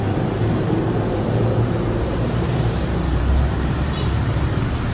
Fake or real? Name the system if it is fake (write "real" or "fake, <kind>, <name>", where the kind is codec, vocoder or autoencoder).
fake, vocoder, BigVGAN v2